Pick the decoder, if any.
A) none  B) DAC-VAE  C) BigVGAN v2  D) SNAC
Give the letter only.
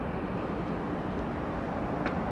A